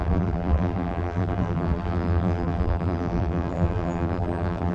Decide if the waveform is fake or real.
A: fake